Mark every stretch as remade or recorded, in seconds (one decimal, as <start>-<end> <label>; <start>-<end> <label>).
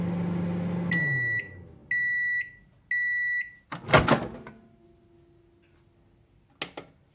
0.0-7.1 recorded